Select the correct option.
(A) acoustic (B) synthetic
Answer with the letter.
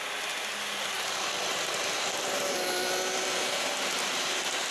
A